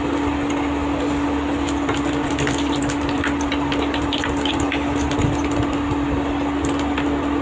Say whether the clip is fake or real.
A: real